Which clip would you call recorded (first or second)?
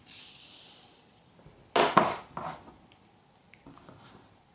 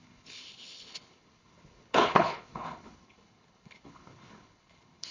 first